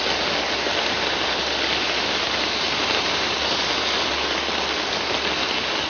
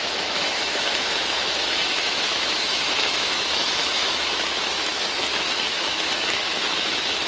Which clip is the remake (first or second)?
second